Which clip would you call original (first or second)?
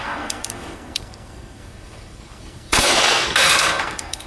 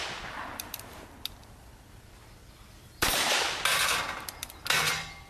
second